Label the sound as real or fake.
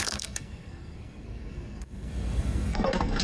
fake